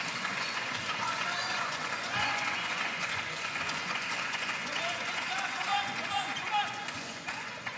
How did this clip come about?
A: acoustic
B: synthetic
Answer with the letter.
B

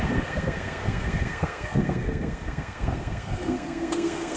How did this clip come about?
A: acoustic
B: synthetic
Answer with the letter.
B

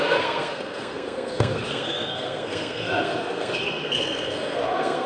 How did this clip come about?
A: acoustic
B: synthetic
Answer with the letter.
B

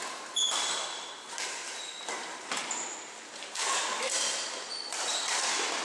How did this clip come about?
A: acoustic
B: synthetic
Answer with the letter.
A